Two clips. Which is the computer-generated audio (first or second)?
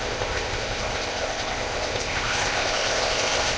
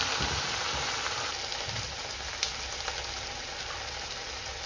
first